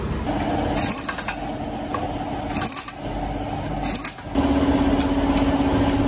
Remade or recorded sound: recorded